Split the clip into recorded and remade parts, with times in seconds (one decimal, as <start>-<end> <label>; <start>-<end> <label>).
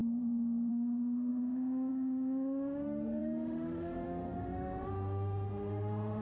0.0-0.7 recorded; 0.7-6.2 remade